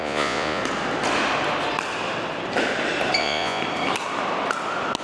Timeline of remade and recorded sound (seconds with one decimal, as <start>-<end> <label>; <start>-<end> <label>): 0.0-0.6 remade; 0.6-3.2 recorded; 3.2-3.6 remade; 3.6-5.0 recorded

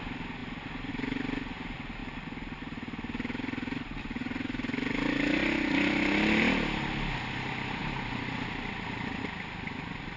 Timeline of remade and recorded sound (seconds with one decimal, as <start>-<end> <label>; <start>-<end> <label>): 0.0-10.2 recorded

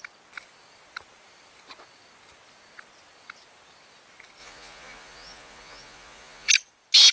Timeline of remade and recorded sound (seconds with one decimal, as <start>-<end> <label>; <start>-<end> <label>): 0.0-4.4 recorded; 4.4-6.5 remade; 6.5-7.1 recorded

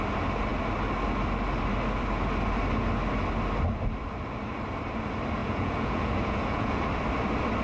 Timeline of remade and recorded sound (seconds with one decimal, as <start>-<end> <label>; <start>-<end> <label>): 0.0-5.4 recorded; 5.4-6.8 remade; 6.8-7.6 recorded